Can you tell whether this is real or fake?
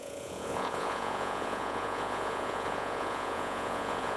fake